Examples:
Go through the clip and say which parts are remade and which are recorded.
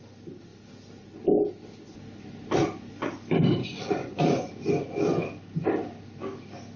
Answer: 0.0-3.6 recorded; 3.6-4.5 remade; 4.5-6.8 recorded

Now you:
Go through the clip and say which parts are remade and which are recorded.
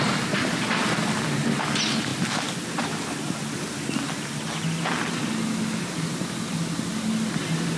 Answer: 0.0-7.8 recorded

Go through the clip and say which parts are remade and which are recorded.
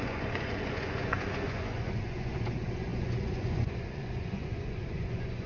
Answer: 0.0-5.5 remade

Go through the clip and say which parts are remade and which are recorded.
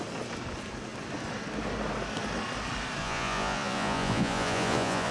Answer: 0.0-3.0 recorded; 3.0-5.1 remade